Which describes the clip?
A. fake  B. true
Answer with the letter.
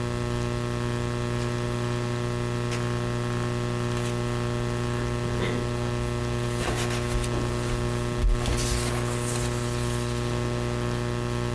B